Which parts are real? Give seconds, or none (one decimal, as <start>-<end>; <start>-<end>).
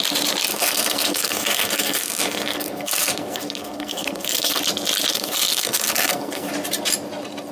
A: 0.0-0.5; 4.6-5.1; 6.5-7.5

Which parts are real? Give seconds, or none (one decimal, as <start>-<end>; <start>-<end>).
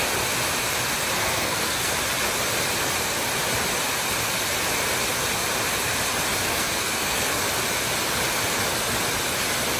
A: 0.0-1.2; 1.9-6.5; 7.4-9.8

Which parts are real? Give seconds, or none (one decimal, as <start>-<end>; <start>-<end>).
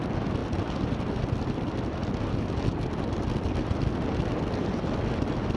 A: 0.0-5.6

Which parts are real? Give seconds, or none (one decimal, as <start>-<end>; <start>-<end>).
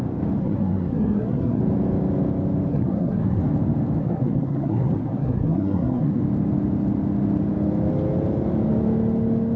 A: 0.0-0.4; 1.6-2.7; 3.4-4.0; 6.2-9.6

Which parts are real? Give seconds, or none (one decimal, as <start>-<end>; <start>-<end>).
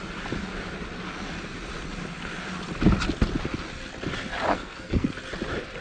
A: 0.0-4.5; 5.1-5.8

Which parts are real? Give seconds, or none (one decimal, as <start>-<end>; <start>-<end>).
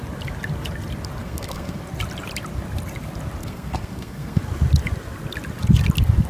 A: 0.0-1.2; 1.8-3.4; 4.4-6.3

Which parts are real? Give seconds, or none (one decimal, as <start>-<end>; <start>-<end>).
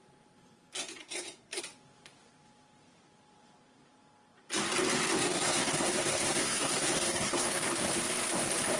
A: 0.0-1.0; 1.6-5.2; 7.6-8.8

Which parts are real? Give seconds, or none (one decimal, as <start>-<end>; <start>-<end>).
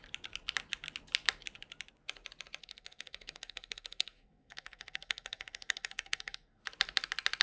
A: 0.0-2.6; 6.6-7.4